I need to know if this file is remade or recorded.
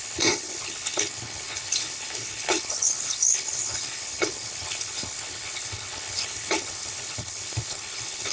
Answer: remade